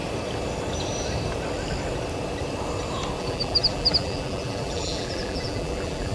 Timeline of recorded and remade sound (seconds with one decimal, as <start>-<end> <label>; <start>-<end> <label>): 0.0-3.2 recorded; 3.2-6.1 remade